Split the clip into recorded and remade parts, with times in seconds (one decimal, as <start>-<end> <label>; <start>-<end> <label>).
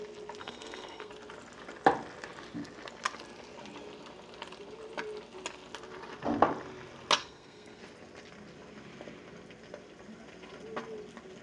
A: 0.0-0.4 recorded; 0.4-1.1 remade; 1.1-7.2 recorded; 7.2-7.8 remade; 7.8-11.4 recorded